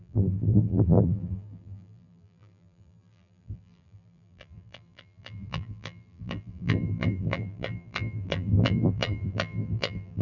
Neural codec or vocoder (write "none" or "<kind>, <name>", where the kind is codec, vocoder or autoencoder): vocoder, BigVGAN v2